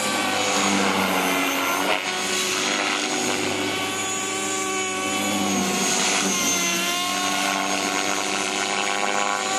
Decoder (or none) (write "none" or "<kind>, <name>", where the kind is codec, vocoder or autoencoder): none